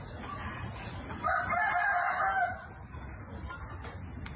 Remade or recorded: recorded